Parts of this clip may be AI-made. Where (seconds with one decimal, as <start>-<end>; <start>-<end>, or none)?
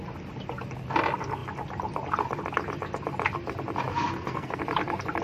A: 3.9-4.6